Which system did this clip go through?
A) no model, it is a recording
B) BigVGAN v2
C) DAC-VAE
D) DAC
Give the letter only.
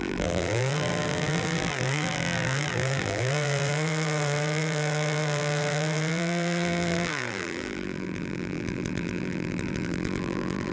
B